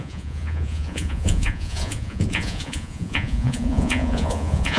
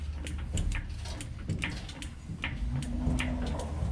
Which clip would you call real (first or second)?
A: second